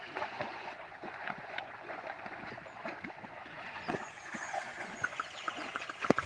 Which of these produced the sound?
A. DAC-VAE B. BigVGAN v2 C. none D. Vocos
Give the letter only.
D